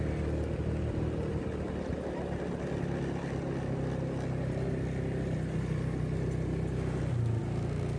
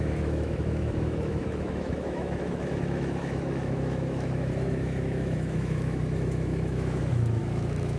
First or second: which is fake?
second